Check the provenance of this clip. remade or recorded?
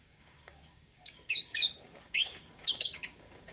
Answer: remade